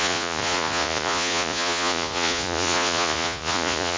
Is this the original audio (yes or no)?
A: no